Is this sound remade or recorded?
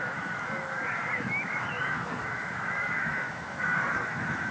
remade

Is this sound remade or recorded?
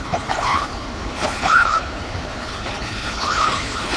remade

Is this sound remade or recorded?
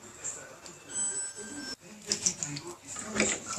recorded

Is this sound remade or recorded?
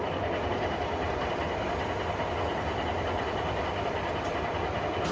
recorded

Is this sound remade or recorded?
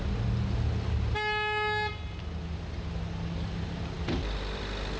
recorded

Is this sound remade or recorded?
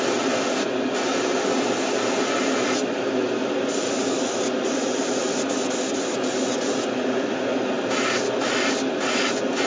recorded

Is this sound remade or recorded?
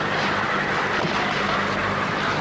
recorded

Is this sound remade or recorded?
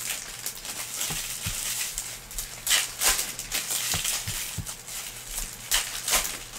recorded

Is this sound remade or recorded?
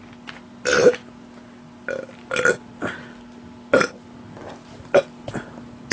recorded